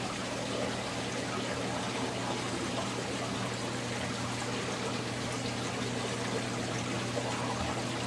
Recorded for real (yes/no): yes